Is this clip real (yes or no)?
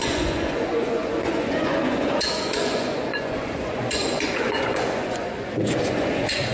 no